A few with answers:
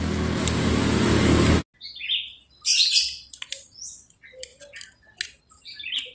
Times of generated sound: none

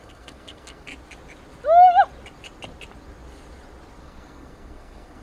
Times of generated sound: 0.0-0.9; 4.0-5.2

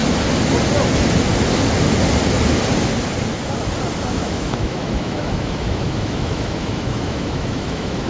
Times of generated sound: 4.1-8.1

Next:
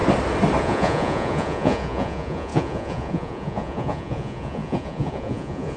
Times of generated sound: 0.6-5.8